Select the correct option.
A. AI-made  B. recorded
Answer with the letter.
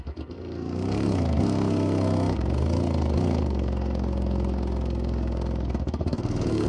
A